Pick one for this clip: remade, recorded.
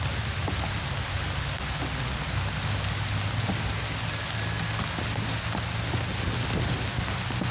recorded